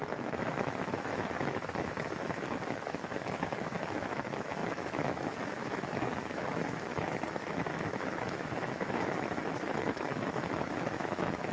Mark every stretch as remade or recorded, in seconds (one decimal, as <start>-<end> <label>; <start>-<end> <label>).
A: 0.0-11.5 remade

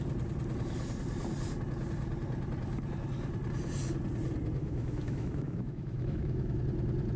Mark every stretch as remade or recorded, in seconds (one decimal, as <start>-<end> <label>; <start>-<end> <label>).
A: 0.0-4.6 recorded; 4.6-6.6 remade; 6.6-7.2 recorded